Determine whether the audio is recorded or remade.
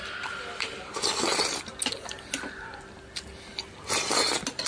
recorded